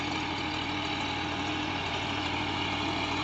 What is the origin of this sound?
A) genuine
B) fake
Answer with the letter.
B